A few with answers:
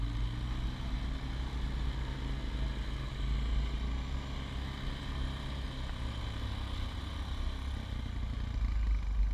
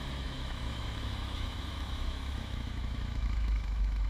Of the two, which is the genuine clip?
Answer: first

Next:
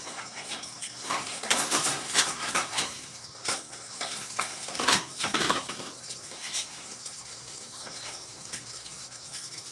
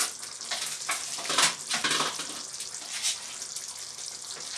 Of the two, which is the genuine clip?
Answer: second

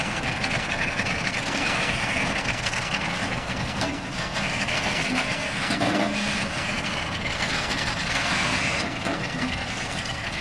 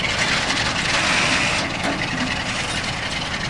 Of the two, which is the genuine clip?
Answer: second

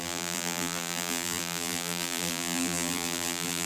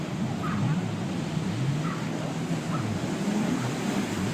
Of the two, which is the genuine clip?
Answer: second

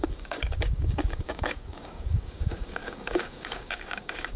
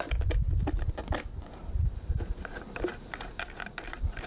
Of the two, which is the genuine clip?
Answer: second